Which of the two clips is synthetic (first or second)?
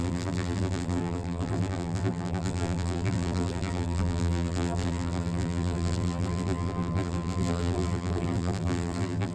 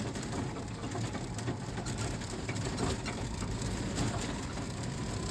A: first